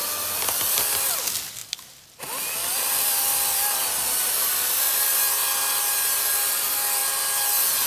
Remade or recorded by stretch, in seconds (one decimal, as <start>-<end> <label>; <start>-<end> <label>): 0.0-7.9 recorded